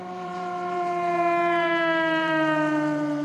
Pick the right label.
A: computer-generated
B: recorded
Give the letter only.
A